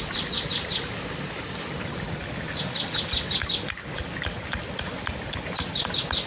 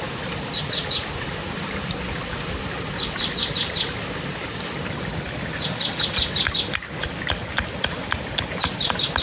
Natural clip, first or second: first